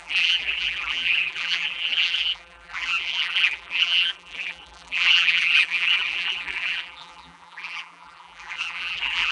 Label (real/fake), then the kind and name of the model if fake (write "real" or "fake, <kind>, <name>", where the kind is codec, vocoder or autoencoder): fake, vocoder, BigVGAN v2